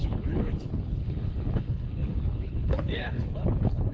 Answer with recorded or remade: remade